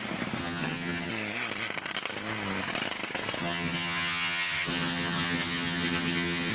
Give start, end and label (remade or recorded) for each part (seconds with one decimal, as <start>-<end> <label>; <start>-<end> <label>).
0.0-0.4 recorded; 0.4-1.1 remade; 1.1-3.4 recorded; 3.4-6.5 remade